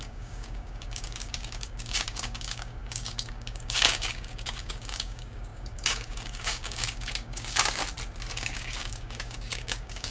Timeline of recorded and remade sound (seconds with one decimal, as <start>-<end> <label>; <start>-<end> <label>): 0.0-7.8 remade; 7.8-8.3 recorded; 8.3-10.1 remade